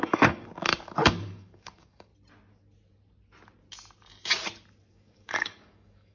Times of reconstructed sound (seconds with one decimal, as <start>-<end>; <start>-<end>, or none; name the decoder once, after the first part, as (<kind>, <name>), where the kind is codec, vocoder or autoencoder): 0.0-2.1 (codec, DAC); 4.9-6.1